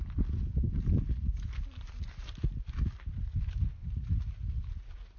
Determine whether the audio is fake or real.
real